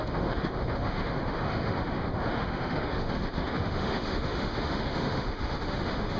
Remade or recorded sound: remade